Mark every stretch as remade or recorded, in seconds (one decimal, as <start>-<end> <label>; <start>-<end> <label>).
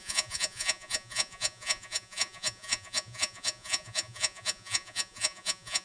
0.0-5.8 remade